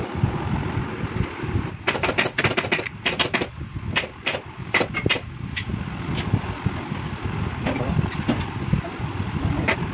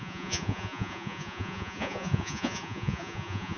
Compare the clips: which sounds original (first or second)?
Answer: first